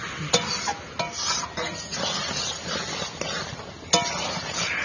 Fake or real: real